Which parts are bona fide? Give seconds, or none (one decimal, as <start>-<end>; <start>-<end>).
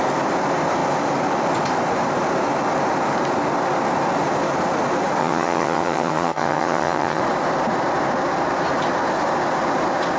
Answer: 0.0-5.2; 7.2-10.2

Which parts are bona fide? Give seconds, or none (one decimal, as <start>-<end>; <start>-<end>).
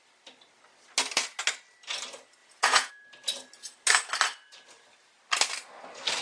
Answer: 0.0-2.4; 2.9-6.2